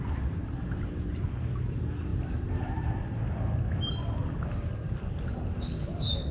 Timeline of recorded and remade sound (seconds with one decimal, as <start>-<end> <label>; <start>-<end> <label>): 0.0-6.3 recorded